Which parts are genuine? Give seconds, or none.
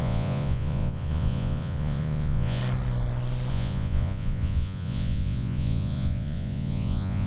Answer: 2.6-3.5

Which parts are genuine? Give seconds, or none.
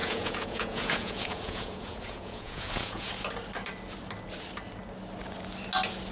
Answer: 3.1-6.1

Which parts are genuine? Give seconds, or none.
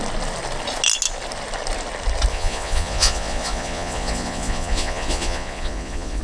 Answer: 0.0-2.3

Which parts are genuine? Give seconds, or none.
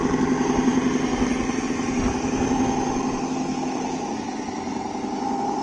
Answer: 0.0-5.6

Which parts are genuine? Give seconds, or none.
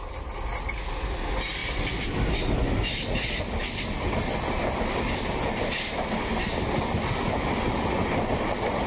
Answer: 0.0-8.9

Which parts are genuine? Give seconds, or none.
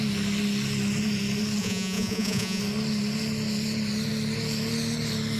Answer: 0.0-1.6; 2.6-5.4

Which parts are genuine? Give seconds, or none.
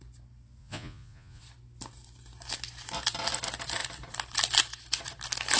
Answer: 0.0-0.6; 1.4-5.6